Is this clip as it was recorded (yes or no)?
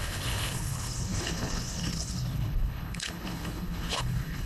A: no